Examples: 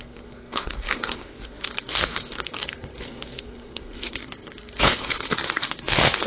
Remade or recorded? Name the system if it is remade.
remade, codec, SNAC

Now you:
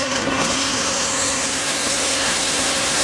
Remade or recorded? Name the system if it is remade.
remade, codec, SNAC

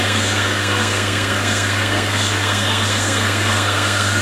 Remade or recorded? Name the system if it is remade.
remade, codec, SNAC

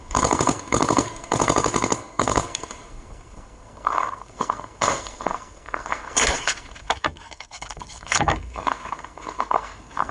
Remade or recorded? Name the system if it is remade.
remade, codec, SNAC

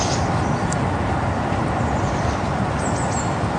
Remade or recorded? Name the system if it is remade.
recorded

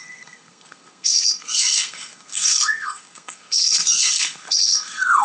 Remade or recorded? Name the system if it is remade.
remade, codec, SNAC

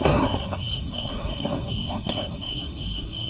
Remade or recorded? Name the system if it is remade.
remade, codec, SNAC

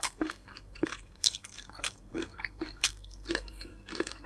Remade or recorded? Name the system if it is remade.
remade, codec, SNAC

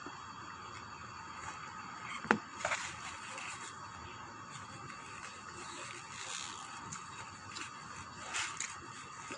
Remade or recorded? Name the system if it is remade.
recorded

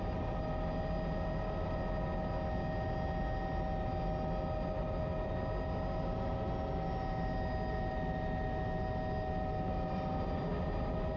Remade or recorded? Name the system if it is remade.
recorded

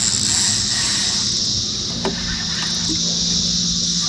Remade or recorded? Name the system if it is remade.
recorded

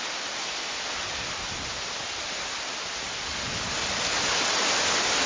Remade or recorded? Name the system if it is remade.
recorded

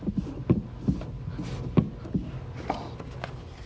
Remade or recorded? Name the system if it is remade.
recorded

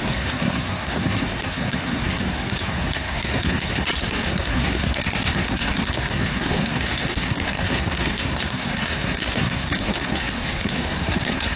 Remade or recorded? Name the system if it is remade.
remade, codec, SNAC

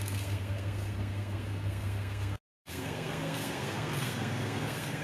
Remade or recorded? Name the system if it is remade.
remade, codec, SNAC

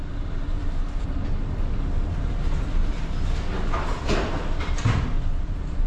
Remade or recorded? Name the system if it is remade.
recorded